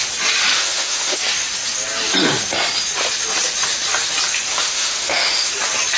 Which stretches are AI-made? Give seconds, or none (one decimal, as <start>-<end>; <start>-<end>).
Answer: 0.5-1.2; 4.5-5.5